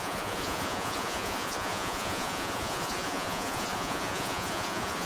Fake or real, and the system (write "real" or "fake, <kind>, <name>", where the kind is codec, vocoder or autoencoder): fake, vocoder, Vocos